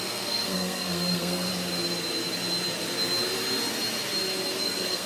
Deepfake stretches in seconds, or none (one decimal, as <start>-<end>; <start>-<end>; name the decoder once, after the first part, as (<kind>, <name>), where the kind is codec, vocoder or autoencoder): 0.0-1.5 (codec, SNAC); 4.6-5.1

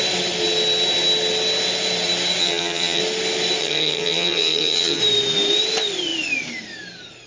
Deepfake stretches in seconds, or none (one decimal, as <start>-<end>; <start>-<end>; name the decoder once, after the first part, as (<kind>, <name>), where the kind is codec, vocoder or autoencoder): 2.4-3.0 (vocoder, HiFi-GAN); 3.6-5.0

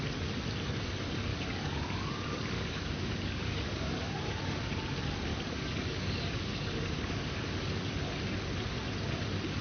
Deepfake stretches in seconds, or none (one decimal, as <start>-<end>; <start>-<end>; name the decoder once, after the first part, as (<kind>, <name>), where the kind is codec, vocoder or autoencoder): 1.3-4.6 (codec, DAC); 5.3-7.9

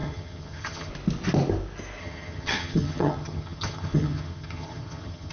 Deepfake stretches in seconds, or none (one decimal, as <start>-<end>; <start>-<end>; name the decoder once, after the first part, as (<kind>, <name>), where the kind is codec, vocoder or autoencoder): 0.0-0.9 (vocoder, HiFi-GAN); 2.0-5.3

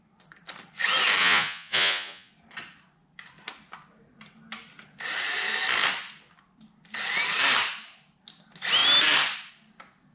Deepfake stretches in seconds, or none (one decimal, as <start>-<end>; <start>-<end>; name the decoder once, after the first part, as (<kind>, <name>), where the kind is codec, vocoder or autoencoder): 1.2-2.3 (vocoder, Vocos)

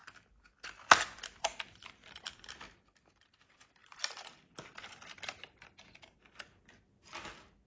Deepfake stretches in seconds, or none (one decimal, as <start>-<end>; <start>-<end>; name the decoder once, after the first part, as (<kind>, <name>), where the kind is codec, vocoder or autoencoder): none

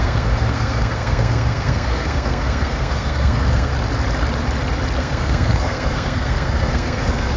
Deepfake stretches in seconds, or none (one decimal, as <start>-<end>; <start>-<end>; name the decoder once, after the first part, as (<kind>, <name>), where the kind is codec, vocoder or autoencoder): 0.0-3.7 (codec, SNAC); 5.0-7.4

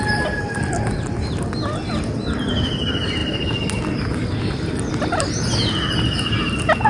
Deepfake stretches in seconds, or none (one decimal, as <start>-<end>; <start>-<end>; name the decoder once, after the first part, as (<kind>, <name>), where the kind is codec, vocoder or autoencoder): none